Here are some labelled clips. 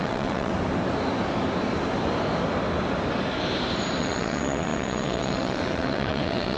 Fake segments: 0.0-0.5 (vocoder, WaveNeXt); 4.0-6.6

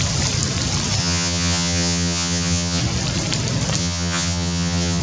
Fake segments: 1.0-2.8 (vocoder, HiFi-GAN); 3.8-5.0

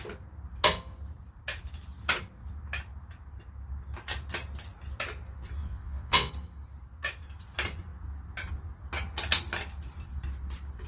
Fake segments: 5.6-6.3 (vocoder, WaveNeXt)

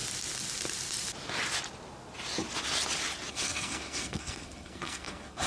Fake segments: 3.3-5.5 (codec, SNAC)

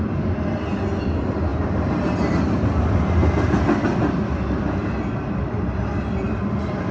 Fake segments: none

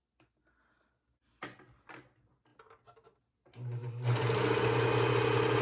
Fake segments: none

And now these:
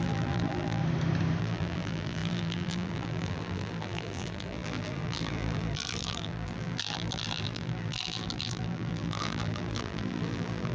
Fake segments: 0.0-0.8 (vocoder, BigVGAN v2); 1.4-10.7